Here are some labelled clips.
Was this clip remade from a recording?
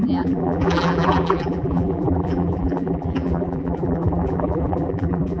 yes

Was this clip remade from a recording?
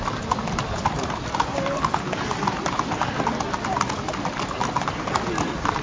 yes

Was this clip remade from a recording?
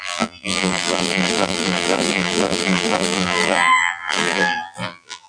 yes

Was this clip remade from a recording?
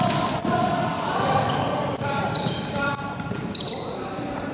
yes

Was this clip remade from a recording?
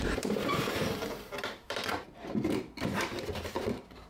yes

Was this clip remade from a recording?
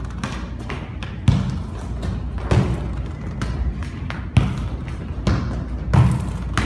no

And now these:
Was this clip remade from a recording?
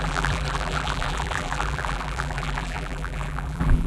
yes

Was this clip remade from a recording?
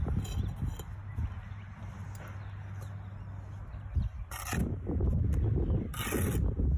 no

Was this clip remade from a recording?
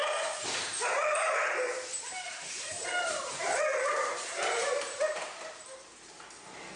yes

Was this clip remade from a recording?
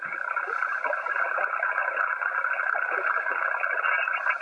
yes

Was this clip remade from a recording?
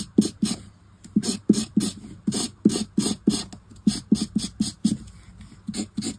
no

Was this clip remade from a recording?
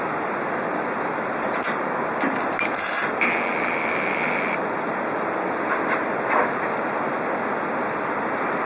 no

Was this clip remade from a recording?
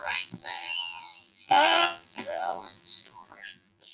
yes